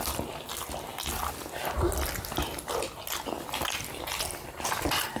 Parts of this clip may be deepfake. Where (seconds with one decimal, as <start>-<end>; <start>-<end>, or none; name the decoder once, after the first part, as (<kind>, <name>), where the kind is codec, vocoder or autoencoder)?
none